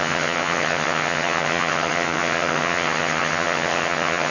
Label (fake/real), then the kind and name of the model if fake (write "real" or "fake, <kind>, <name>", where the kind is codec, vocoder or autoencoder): fake, vocoder, HiFi-GAN